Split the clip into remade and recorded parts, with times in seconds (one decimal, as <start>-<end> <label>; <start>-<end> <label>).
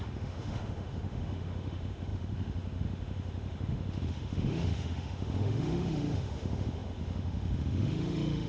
0.0-8.5 remade